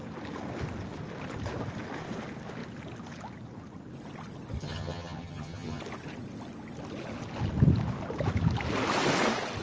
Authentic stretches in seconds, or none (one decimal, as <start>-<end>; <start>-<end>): 0.0-4.6; 5.8-9.6